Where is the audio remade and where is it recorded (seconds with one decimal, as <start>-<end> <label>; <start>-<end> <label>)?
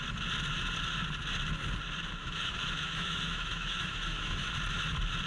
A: 0.0-2.2 recorded; 2.2-4.5 remade; 4.5-5.3 recorded